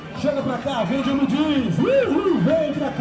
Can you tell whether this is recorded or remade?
recorded